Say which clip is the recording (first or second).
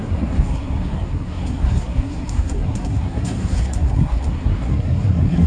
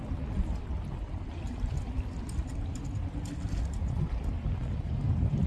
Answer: second